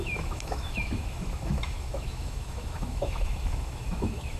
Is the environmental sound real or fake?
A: fake